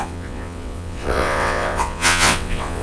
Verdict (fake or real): fake